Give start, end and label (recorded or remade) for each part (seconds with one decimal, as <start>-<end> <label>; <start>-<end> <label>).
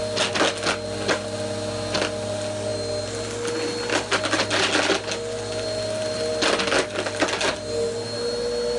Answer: 0.0-8.8 recorded